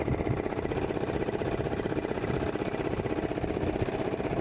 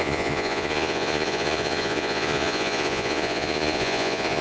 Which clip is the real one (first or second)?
first